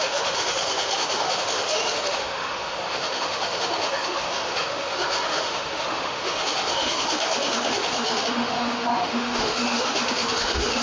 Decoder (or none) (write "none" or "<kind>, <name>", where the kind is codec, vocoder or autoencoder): autoencoder, DAC-VAE